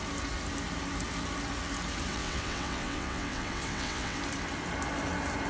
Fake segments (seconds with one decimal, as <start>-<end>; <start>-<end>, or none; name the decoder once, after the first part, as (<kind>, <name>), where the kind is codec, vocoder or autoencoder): 2.1-4.2 (vocoder, WaveNeXt)